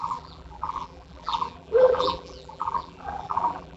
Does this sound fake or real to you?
fake